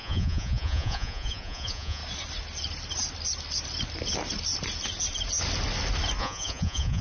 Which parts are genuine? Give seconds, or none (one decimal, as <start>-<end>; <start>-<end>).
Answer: 2.0-6.2